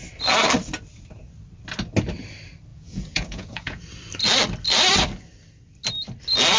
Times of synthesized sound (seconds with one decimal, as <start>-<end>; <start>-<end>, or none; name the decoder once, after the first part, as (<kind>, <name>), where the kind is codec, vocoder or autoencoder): 2.7-3.8 (vocoder, Vocos)